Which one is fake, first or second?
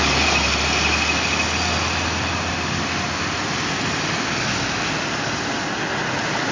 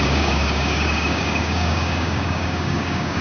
second